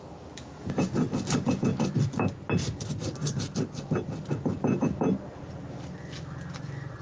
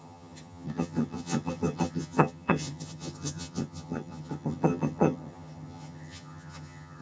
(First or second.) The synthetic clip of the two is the second